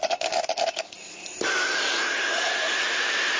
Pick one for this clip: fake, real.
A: real